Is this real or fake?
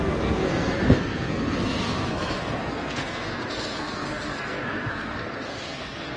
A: fake